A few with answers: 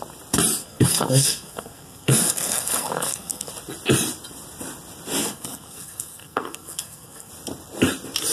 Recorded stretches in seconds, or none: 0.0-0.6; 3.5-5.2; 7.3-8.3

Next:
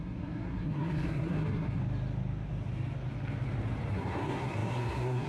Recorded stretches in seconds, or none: 1.8-3.9

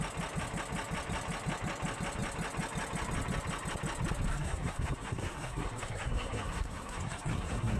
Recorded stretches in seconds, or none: 0.0-4.3

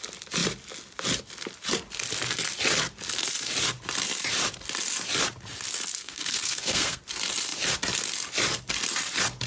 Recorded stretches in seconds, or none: 0.0-6.0; 7.0-9.5

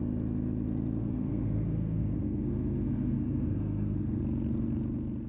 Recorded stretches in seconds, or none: 0.0-1.0; 4.2-5.3

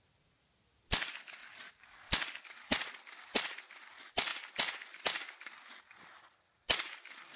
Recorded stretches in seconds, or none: 0.0-7.4

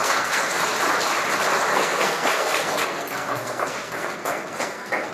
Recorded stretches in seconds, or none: 0.6-1.7

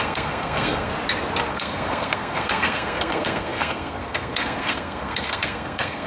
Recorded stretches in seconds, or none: 0.9-1.5